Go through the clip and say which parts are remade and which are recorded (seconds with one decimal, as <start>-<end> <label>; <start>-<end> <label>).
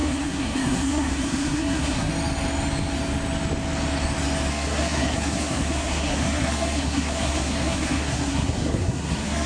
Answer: 0.0-2.1 remade; 2.1-4.5 recorded; 4.5-9.5 remade